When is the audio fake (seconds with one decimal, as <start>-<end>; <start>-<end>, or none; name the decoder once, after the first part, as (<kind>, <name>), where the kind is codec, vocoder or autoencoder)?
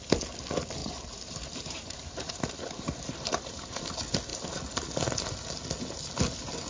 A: 0.8-3.8 (vocoder, BigVGAN v2)